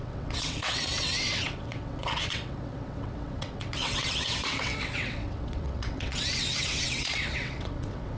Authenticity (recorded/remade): remade